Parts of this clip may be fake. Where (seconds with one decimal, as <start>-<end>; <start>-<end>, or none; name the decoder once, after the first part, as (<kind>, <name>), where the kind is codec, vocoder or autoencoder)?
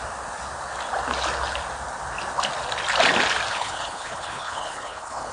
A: 3.5-5.3 (codec, HILCodec)